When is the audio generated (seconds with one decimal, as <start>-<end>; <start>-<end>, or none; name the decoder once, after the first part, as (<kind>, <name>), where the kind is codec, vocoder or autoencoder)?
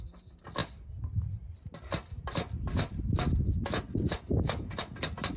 none